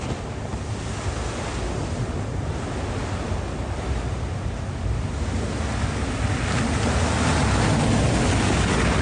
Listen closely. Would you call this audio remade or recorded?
recorded